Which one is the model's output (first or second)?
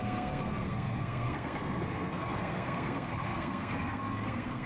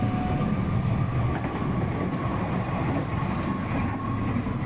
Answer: first